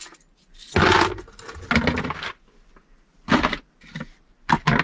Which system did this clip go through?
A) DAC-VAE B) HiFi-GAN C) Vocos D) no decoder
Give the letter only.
D